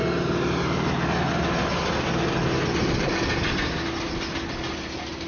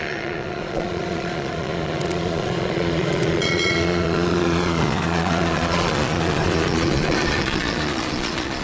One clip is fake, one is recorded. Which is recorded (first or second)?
first